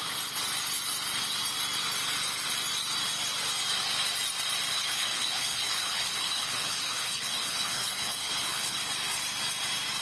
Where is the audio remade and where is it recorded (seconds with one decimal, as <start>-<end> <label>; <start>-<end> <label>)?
0.0-4.7 recorded; 4.7-8.8 remade; 8.8-10.0 recorded